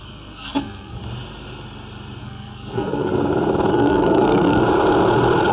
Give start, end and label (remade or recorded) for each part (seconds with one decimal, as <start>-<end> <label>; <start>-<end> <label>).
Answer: 0.0-1.0 remade; 1.0-2.2 recorded; 2.2-3.1 remade; 3.1-3.7 recorded; 3.7-4.6 remade; 4.6-5.5 recorded